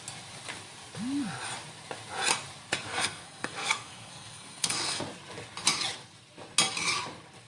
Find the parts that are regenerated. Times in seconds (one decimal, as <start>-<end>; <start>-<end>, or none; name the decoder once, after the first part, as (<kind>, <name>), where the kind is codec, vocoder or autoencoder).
2.9-5.0 (codec, SNAC)